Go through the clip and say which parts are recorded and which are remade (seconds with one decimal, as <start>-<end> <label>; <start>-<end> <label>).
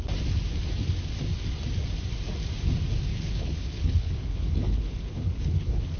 0.0-3.1 recorded; 3.1-6.0 remade